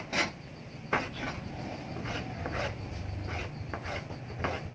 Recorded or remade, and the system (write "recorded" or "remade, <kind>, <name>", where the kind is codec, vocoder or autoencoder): recorded